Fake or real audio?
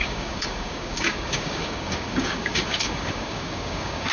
fake